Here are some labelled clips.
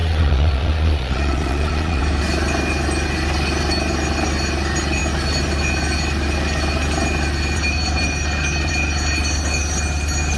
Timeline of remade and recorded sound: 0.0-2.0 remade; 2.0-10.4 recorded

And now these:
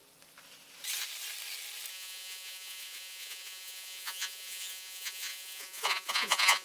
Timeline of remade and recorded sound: 0.0-1.9 recorded; 1.9-6.6 remade

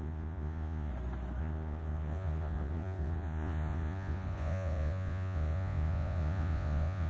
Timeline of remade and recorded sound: 0.0-0.9 remade; 0.9-1.4 recorded; 1.4-7.1 remade

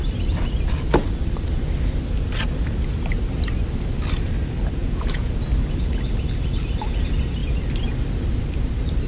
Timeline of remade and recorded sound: 0.0-4.8 recorded; 4.8-5.4 remade; 5.4-9.1 recorded

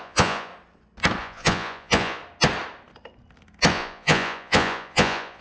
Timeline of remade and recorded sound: 0.0-0.5 remade; 0.5-1.2 recorded; 1.2-2.2 remade; 2.2-3.7 recorded; 3.7-5.4 remade